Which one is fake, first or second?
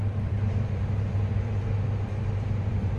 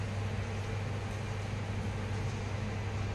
first